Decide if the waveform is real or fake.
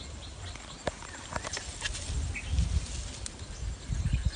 real